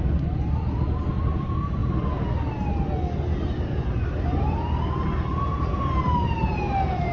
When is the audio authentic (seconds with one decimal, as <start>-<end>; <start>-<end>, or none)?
0.0-7.1